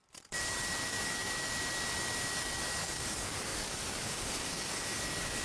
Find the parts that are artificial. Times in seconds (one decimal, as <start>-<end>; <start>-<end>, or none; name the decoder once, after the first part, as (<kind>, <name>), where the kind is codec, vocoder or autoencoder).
0.9-1.5 (codec, DAC); 2.3-5.4